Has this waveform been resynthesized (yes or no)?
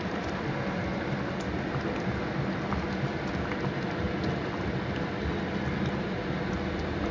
no